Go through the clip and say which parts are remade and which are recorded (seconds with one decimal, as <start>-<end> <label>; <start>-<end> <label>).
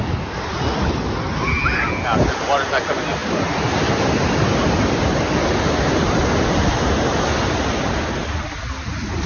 0.0-9.3 recorded